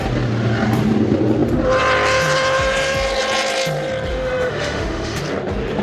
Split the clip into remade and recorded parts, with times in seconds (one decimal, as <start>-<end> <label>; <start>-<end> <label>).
0.0-4.1 recorded; 4.1-5.2 remade; 5.2-5.8 recorded